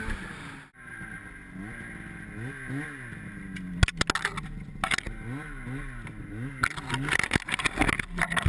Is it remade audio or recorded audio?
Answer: recorded